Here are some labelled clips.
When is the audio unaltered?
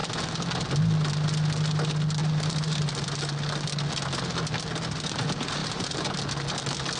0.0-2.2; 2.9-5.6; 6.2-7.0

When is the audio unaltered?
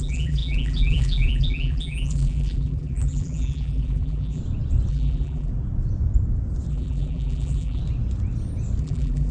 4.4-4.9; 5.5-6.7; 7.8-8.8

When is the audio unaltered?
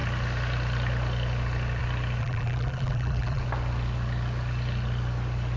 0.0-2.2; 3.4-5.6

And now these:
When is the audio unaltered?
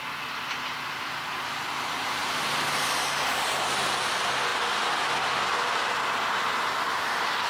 0.0-7.5